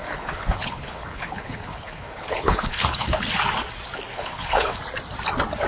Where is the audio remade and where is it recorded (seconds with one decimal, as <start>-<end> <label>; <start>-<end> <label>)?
0.0-3.2 remade; 3.2-4.1 recorded; 4.1-4.8 remade; 4.8-5.7 recorded